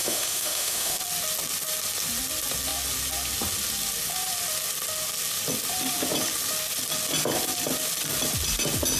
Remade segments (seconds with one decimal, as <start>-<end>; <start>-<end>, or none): 0.0-1.0